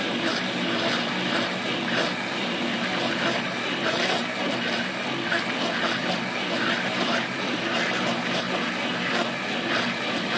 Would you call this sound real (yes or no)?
yes